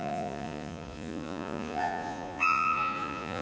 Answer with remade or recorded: remade